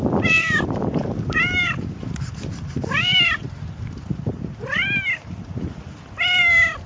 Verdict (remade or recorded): remade